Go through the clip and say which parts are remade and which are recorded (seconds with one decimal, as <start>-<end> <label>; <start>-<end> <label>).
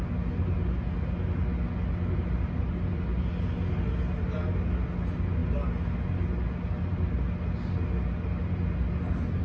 0.0-9.4 recorded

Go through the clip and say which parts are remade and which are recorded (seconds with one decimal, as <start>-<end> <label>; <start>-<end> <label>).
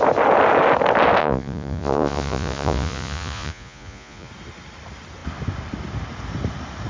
0.0-1.2 recorded; 1.2-4.3 remade; 4.3-6.9 recorded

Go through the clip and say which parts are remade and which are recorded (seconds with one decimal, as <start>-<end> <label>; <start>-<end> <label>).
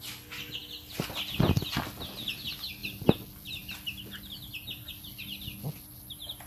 0.0-6.5 recorded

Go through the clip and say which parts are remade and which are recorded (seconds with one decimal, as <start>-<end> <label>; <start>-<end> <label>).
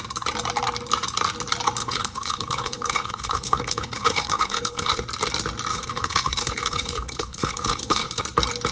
0.0-1.8 recorded; 1.8-5.0 remade; 5.0-5.7 recorded; 5.7-8.2 remade; 8.2-8.7 recorded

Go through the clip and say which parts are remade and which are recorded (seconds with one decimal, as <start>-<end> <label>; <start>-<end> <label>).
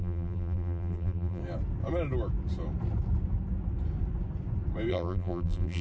0.0-1.4 remade; 1.4-4.9 recorded; 4.9-5.8 remade